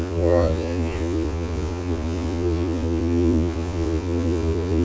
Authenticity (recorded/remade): remade